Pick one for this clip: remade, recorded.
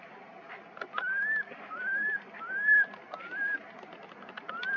recorded